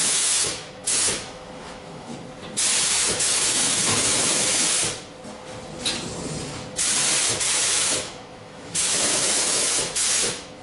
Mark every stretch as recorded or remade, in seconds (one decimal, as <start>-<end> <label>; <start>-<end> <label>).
0.0-2.1 remade; 2.1-2.8 recorded; 2.8-4.6 remade; 4.6-7.3 recorded; 7.3-10.6 remade

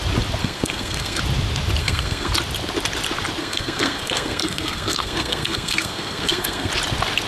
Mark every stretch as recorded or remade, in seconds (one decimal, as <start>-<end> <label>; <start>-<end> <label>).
0.0-0.4 recorded; 0.4-1.2 remade; 1.2-1.8 recorded; 1.8-2.3 remade; 2.3-3.4 recorded; 3.4-6.7 remade; 6.7-7.3 recorded